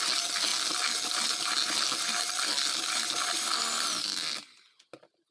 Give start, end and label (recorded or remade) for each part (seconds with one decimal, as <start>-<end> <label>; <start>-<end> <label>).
0.0-5.3 recorded